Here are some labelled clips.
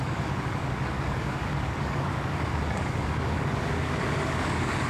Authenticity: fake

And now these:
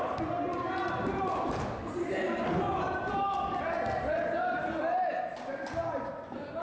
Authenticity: real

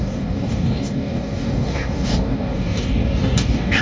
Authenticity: fake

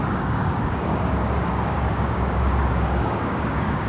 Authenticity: fake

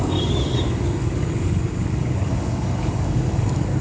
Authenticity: fake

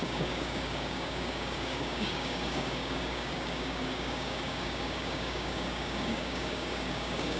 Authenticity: fake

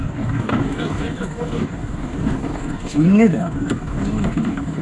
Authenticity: fake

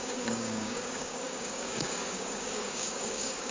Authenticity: fake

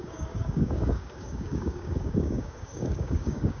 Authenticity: fake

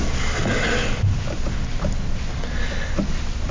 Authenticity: real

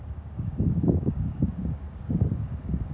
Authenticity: fake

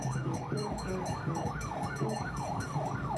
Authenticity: fake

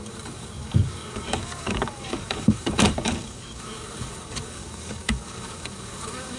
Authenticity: fake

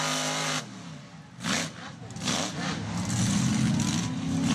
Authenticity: real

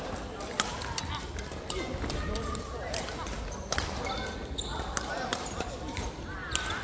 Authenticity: real